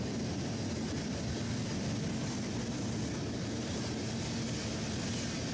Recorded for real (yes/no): yes